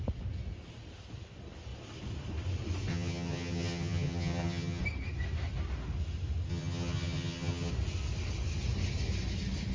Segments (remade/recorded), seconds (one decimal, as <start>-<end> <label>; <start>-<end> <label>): 0.0-2.9 recorded; 2.9-4.8 remade; 4.8-6.5 recorded; 6.5-7.7 remade; 7.7-9.7 recorded